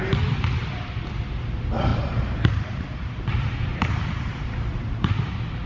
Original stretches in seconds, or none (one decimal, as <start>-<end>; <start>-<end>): 0.0-1.9; 5.3-5.7